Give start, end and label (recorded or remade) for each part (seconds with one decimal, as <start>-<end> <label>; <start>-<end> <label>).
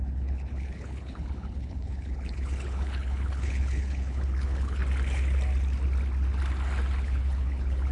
0.0-4.8 remade; 4.8-7.0 recorded; 7.0-7.9 remade